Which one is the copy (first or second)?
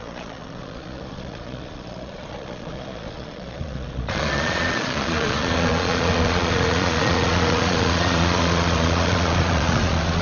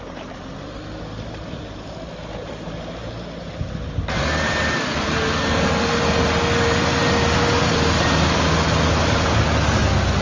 first